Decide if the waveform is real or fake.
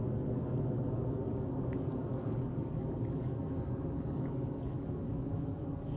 fake